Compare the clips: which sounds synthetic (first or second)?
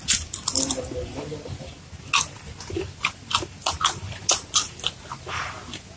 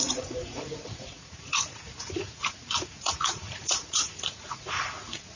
second